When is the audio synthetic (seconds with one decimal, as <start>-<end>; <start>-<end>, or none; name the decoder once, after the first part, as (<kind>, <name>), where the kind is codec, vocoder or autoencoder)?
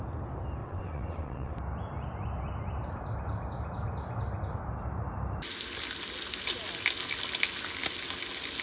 0.6-1.5 (vocoder, WaveNeXt)